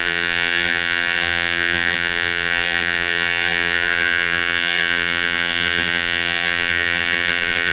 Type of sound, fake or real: fake